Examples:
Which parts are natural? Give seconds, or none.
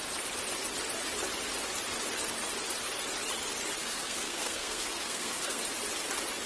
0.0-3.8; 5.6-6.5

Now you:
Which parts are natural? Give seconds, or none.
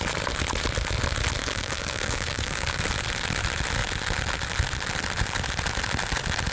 0.0-1.4; 2.8-6.5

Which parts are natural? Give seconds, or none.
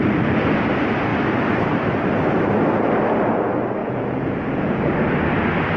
0.0-3.8; 4.9-5.8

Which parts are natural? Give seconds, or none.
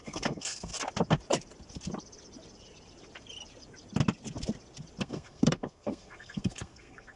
0.7-5.0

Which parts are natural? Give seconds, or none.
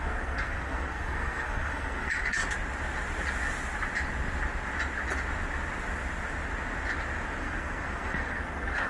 2.4-7.4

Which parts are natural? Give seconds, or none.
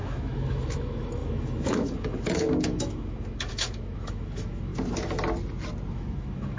4.7-5.9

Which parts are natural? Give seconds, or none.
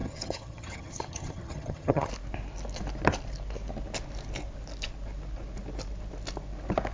2.1-6.9